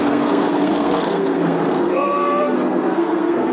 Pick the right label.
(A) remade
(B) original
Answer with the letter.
A